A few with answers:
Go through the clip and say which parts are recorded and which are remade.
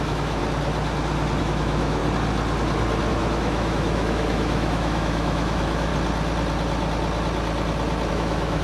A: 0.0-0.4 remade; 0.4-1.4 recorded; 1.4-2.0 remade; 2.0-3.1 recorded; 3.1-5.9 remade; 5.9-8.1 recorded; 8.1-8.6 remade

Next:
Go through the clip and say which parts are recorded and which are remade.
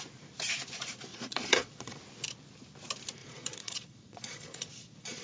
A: 0.0-1.1 recorded; 1.1-2.0 remade; 2.0-3.2 recorded; 3.2-5.2 remade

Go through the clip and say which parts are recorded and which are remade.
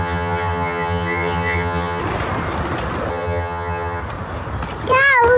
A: 0.0-2.0 remade; 2.0-3.1 recorded; 3.1-4.0 remade; 4.0-5.4 recorded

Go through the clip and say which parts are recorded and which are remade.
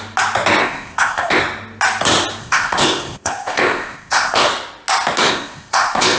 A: 0.0-0.6 recorded; 0.6-1.4 remade; 1.4-2.4 recorded; 2.4-4.5 remade; 4.5-5.3 recorded; 5.3-6.2 remade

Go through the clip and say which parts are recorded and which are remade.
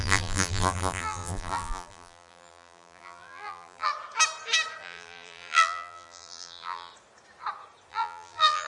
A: 0.0-3.9 remade; 3.9-4.8 recorded; 4.8-6.9 remade; 6.9-7.9 recorded; 7.9-8.7 remade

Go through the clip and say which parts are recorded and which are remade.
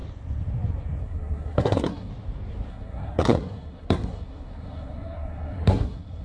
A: 0.0-1.0 recorded; 1.0-2.1 remade; 2.1-2.7 recorded; 2.7-6.2 remade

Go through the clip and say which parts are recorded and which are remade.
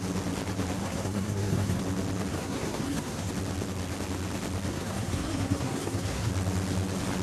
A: 0.0-0.8 recorded; 0.8-1.8 remade; 1.8-2.3 recorded; 2.3-3.3 remade; 3.3-4.7 recorded; 4.7-6.3 remade; 6.3-7.2 recorded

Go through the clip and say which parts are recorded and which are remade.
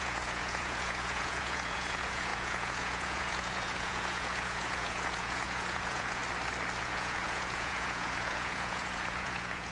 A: 0.0-6.2 remade; 6.2-6.8 recorded; 6.8-9.7 remade